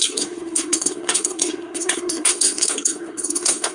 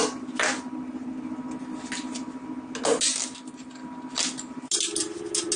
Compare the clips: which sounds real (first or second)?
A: second